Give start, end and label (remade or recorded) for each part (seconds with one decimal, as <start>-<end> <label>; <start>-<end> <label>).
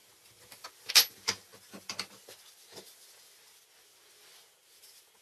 0.0-5.2 recorded